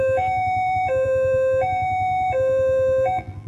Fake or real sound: fake